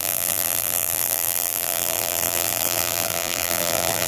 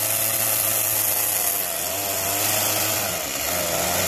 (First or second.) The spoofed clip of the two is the first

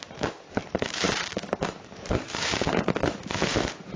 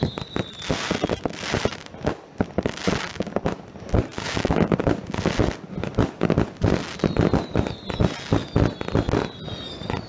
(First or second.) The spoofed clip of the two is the first